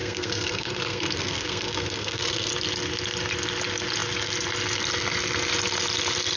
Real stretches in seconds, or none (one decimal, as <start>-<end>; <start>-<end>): 2.5-6.4